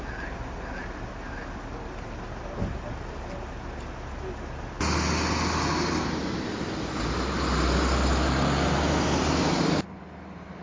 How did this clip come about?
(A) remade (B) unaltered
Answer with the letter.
B